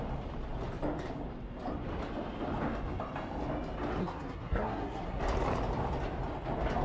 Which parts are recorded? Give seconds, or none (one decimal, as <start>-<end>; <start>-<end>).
0.0-4.0; 5.2-6.8